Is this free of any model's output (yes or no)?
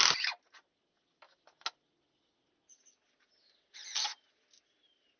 yes